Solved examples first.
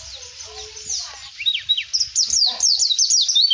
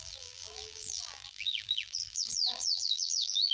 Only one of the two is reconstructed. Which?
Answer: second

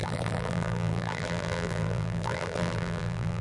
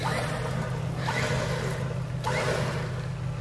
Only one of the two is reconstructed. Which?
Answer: first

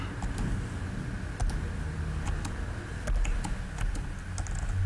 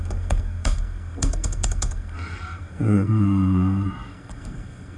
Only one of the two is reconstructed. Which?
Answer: second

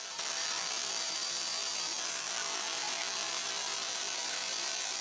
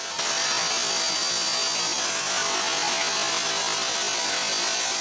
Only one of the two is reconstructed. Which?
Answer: first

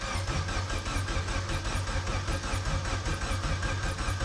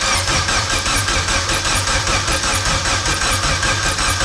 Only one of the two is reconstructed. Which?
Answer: second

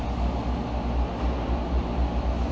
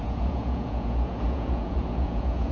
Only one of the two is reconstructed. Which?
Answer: second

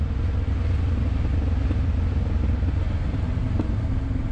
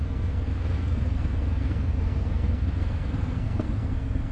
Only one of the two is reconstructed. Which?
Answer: second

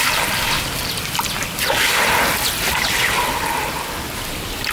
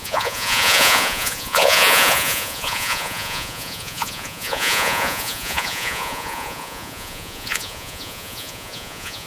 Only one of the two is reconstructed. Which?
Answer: second